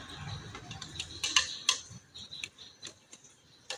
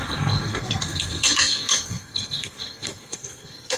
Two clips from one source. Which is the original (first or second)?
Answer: first